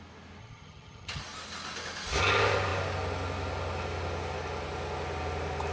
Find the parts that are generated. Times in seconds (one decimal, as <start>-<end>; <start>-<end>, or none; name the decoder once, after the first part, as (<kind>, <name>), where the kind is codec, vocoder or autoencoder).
0.4-1.2 (vocoder, HiFi-GAN)